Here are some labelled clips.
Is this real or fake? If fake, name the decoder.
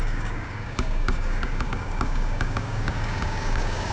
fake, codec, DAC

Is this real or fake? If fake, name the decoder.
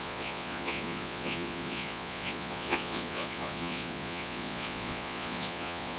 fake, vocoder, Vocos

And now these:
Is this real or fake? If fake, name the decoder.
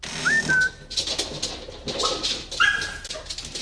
real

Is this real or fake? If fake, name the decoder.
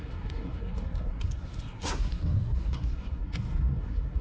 fake, codec, SNAC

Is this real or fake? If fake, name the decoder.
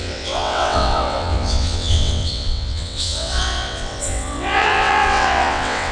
fake, vocoder, WaveNeXt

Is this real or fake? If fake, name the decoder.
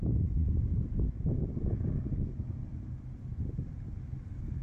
real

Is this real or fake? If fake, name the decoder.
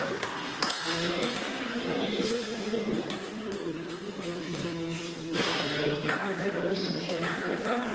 fake, codec, SNAC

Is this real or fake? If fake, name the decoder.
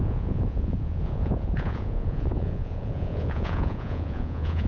fake, vocoder, Vocos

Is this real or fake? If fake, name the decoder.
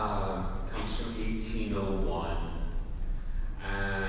real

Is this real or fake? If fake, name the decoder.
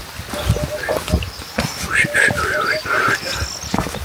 real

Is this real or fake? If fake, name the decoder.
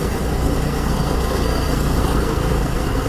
fake, codec, SNAC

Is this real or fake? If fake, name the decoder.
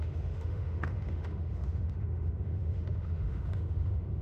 fake, autoencoder, DAC-VAE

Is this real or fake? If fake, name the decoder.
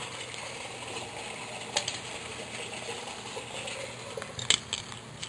real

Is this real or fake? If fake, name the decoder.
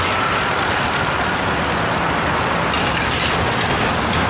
real